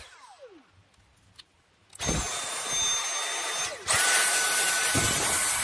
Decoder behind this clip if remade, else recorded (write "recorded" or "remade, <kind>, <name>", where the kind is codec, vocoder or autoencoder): recorded